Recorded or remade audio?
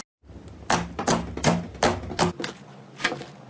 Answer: recorded